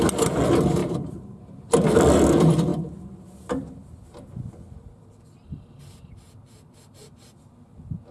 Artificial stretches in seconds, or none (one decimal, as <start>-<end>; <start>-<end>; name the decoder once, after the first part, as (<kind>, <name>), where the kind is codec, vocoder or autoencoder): 0.8-1.4 (vocoder, BigVGAN v2)